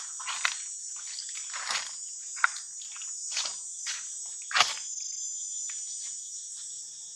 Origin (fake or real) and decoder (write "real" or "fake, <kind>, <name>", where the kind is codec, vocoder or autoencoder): real